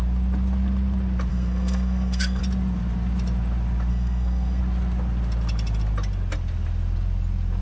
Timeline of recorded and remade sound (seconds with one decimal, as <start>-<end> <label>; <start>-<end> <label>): 0.0-1.3 recorded; 1.3-2.4 remade; 2.4-3.9 recorded; 3.9-4.6 remade; 4.6-7.6 recorded